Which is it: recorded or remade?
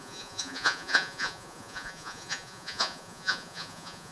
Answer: remade